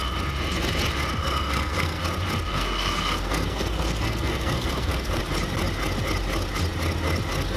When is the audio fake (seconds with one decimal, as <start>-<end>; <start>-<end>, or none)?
1.1-2.0; 2.5-5.2

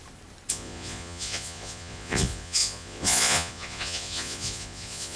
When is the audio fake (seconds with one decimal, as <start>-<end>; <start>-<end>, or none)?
0.5-5.2

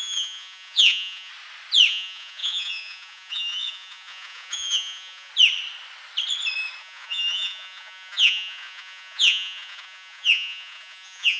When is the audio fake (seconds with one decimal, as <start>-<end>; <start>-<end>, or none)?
0.0-1.3; 1.9-5.3; 6.8-11.4

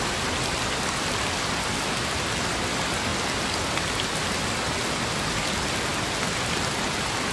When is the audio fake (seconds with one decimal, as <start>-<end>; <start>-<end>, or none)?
none

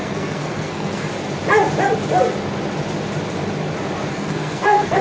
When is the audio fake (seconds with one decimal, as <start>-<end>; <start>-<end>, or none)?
0.0-1.1; 4.1-5.0